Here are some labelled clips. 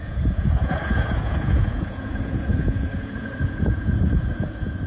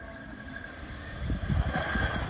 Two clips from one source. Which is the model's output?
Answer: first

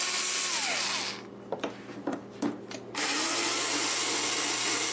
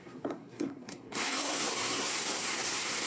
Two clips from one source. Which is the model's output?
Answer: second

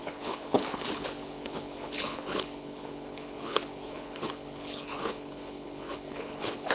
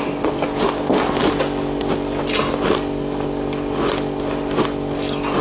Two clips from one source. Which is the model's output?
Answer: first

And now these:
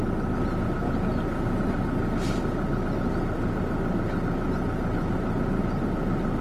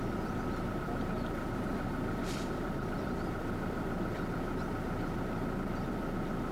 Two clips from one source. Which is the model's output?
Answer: second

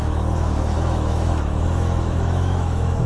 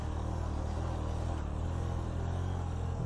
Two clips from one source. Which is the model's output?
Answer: first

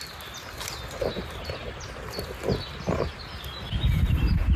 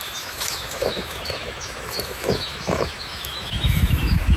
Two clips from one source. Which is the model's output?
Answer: second